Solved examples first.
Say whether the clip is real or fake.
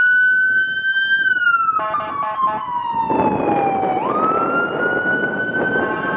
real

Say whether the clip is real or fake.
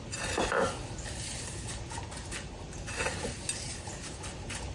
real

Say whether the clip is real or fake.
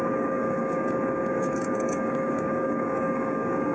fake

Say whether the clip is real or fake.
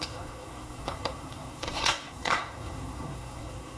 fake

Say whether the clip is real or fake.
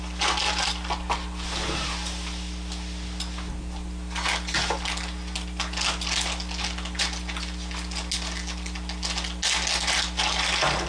real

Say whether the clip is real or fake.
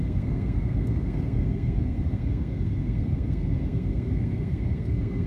fake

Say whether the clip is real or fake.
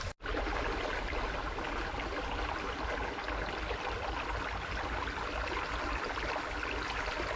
real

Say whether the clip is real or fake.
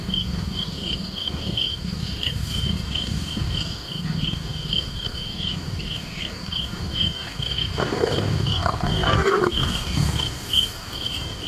fake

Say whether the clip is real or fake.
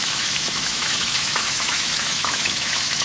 fake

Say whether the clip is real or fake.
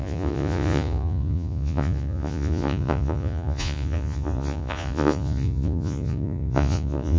fake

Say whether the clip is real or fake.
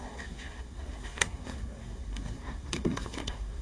fake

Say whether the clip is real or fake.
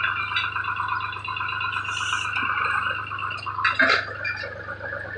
real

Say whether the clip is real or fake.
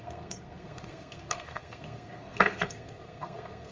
fake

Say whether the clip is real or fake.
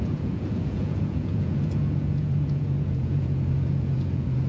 fake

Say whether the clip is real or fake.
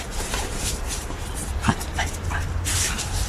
real